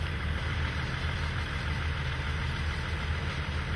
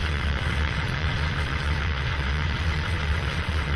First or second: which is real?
first